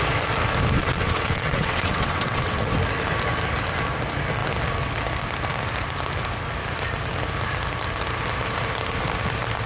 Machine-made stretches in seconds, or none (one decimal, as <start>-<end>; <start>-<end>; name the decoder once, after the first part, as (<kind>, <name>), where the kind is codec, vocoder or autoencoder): 0.8-2.7 (vocoder, WaveNeXt)